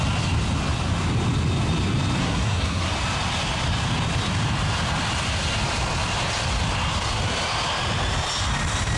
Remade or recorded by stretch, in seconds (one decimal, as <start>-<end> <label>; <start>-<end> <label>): 0.0-2.2 recorded; 2.2-2.9 remade; 2.9-9.0 recorded